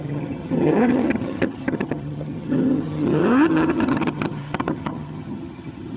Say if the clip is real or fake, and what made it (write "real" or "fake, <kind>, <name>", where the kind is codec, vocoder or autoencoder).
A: fake, vocoder, HiFi-GAN